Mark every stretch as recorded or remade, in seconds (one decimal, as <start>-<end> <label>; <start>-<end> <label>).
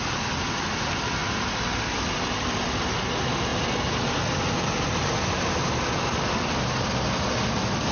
0.0-7.9 recorded